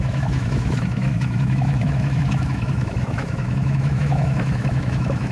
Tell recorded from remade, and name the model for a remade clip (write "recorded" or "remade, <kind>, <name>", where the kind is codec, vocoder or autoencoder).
remade, autoencoder, DAC-VAE